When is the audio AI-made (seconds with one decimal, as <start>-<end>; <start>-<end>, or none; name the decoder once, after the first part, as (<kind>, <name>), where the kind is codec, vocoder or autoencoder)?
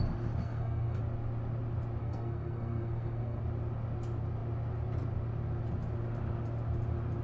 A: 0.4-1.0 (codec, SNAC); 2.0-3.4